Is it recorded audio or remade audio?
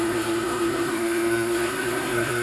remade